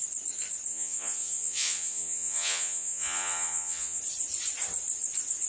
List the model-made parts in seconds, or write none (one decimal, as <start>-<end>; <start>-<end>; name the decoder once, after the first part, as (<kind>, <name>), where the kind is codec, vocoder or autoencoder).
0.7-4.0 (vocoder, Vocos)

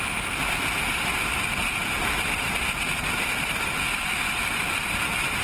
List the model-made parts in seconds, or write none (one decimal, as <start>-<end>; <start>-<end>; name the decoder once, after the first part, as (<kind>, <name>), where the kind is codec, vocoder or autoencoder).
none

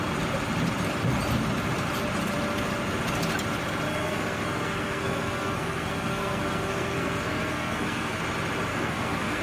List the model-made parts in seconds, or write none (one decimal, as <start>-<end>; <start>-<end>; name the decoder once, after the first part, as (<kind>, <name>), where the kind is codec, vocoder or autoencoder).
3.9-8.2 (codec, SNAC); 8.7-9.4

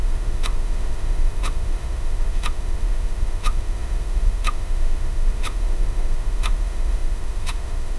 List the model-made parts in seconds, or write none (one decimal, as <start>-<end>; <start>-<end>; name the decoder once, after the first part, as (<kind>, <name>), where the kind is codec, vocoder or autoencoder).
0.0-8.0 (autoencoder, DAC-VAE)

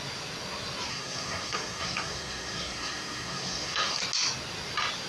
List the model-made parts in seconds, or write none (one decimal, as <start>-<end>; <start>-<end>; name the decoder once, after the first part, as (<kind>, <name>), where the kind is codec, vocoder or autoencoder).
0.9-4.0 (codec, SNAC)

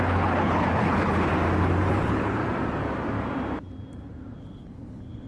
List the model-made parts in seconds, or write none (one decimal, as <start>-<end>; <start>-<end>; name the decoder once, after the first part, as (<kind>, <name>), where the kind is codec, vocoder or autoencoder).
0.0-1.3 (codec, HILCodec); 1.9-2.4; 4.4-5.3

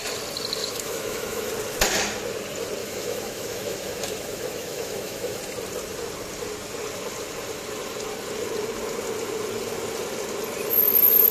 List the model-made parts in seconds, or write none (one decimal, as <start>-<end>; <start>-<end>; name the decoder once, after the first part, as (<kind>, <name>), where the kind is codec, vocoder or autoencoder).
0.6-1.5 (autoencoder, DAC-VAE); 2.8-5.4